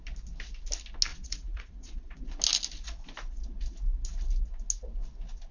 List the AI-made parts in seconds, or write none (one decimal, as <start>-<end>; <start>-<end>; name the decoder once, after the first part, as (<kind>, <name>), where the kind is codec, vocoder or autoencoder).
1.1-2.2 (vocoder, Vocos)